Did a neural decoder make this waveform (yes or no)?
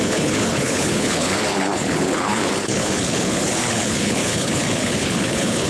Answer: yes